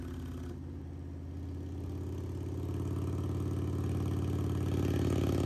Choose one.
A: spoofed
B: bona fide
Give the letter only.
B